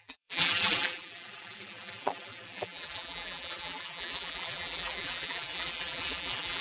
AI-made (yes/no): yes